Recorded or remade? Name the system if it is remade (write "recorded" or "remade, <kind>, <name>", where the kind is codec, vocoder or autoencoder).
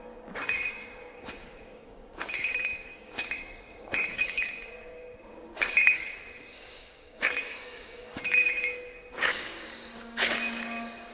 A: remade, codec, DAC